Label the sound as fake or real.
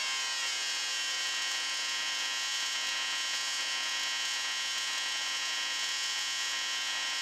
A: fake